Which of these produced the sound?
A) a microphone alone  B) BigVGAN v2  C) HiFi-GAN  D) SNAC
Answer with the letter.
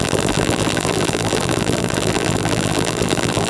B